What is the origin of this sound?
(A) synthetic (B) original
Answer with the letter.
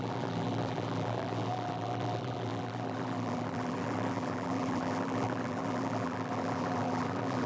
A